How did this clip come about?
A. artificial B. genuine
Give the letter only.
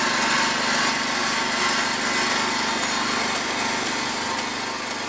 B